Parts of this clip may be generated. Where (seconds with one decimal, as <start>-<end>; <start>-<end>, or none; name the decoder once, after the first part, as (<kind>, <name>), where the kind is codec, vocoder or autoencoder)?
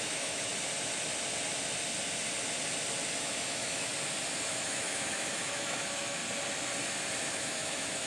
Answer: 0.0-0.5 (autoencoder, DAC-VAE); 3.2-3.9; 4.5-6.2; 7.3-8.1